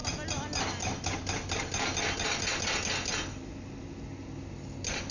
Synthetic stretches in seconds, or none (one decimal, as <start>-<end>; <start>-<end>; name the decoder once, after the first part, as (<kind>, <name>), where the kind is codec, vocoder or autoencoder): none

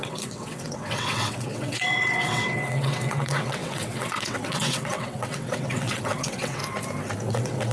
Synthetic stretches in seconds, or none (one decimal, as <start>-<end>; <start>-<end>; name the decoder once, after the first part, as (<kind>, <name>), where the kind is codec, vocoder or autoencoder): 0.0-6.6 (vocoder, WaveNeXt); 7.3-7.7